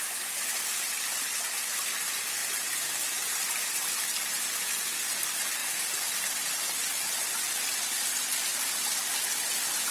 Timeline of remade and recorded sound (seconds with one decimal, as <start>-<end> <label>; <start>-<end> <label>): 0.0-9.9 recorded